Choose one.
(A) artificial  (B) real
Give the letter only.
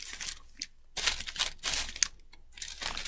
B